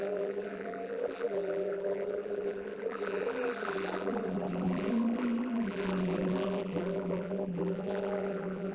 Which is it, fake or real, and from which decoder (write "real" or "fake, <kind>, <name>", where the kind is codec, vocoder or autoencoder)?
fake, vocoder, BigVGAN v2